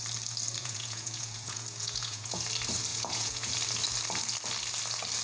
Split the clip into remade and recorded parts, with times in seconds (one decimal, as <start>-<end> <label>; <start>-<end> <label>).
0.0-0.6 recorded; 0.6-2.4 remade; 2.4-2.9 recorded; 2.9-3.5 remade; 3.5-5.2 recorded